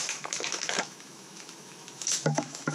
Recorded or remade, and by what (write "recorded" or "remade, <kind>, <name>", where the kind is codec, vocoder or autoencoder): remade, autoencoder, DAC-VAE